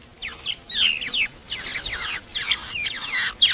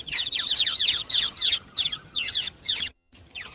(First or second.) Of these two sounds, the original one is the first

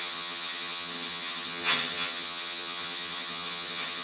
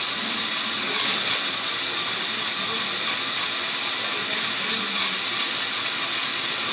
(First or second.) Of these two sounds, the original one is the second